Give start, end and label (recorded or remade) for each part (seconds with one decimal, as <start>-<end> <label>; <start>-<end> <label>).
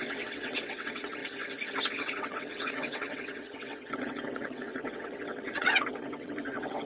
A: 0.0-1.2 remade; 1.2-1.9 recorded; 1.9-6.9 remade